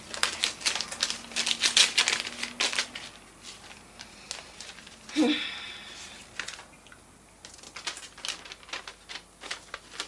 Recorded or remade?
recorded